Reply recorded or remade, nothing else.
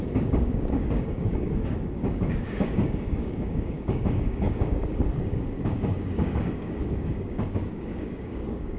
remade